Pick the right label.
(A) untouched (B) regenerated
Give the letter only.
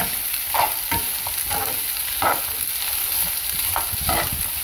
B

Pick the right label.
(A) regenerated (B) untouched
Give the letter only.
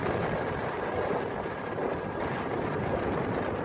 B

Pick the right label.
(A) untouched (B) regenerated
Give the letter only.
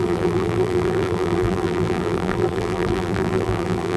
B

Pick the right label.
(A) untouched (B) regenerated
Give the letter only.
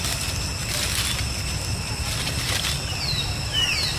A